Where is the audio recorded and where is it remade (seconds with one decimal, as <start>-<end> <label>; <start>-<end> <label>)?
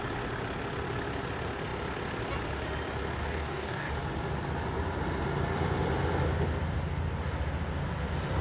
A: 0.0-3.2 recorded; 3.2-3.9 remade; 3.9-8.4 recorded